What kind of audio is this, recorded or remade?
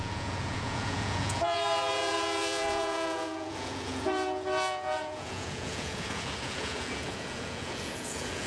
remade